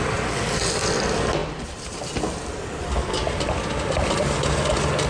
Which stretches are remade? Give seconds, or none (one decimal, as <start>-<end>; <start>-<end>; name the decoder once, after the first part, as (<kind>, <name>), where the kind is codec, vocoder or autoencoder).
none